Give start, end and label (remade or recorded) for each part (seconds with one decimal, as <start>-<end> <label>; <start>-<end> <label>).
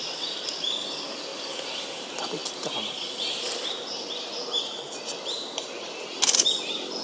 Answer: 0.0-7.0 recorded